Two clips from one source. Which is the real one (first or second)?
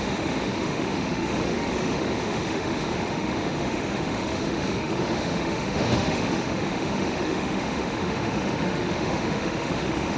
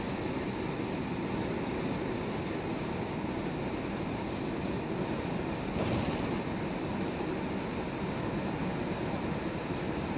second